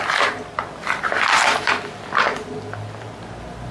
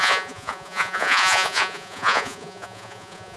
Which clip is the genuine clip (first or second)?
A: first